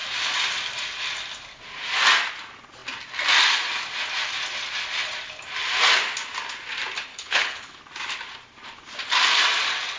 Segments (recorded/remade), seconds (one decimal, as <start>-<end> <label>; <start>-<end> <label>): 0.0-7.1 recorded; 7.1-7.8 remade; 7.8-10.0 recorded